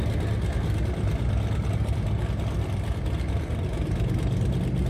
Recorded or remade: recorded